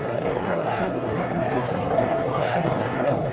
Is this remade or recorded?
remade